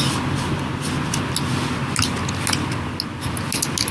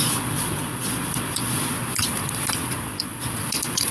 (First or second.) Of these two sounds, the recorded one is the first